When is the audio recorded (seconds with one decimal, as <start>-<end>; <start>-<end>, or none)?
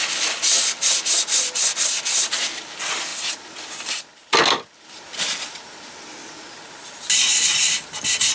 0.0-8.3